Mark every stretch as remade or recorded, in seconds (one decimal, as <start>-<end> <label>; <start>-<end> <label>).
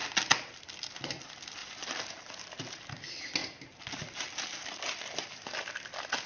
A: 0.0-1.6 recorded; 1.6-2.8 remade; 2.8-3.4 recorded; 3.4-5.6 remade; 5.6-6.3 recorded